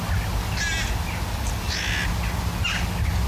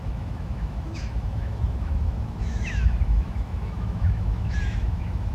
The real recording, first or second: first